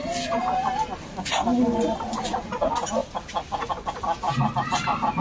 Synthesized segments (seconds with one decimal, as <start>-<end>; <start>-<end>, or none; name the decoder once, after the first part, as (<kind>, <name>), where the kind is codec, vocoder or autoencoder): none